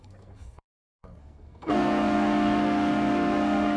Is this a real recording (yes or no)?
no